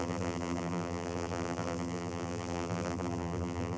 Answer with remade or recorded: remade